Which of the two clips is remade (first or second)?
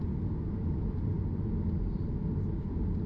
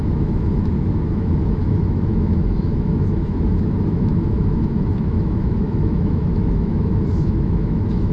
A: second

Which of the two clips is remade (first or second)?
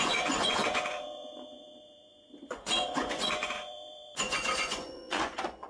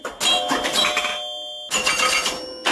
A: first